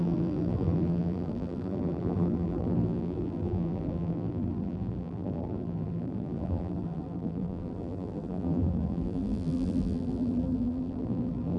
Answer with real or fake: fake